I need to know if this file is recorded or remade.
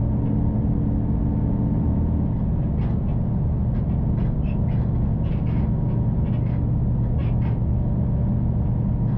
recorded